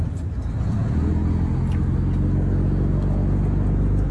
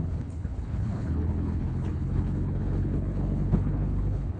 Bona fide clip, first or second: first